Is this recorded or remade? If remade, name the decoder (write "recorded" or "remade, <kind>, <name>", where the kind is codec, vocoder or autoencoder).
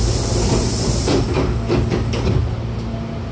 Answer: recorded